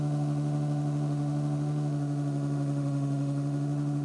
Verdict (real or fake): fake